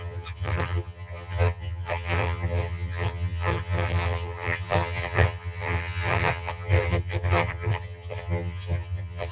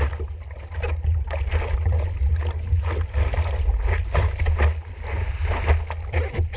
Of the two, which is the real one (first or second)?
second